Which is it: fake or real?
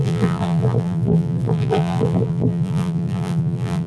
fake